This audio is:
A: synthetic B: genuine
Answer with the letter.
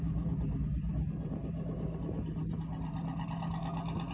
B